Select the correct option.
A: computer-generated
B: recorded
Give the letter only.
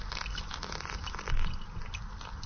B